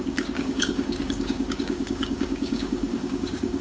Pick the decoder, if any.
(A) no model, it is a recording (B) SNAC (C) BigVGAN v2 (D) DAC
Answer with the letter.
D